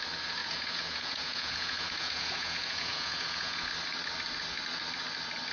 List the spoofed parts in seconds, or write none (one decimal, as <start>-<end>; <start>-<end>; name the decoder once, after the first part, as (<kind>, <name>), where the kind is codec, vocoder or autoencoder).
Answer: 0.4-3.7 (vocoder, Vocos)